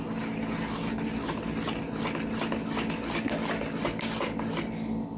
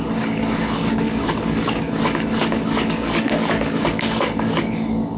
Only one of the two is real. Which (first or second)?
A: first